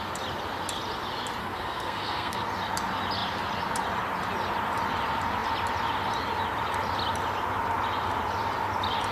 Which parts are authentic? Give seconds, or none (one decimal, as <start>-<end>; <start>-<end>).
0.0-1.4; 2.5-9.1